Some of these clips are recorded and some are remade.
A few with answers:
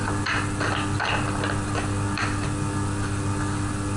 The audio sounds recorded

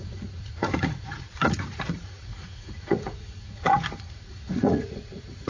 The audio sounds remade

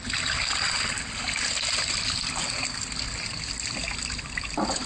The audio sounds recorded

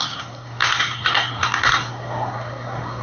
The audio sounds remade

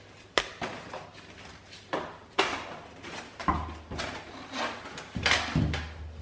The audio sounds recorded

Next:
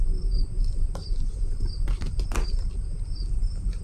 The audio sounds recorded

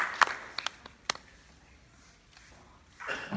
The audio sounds recorded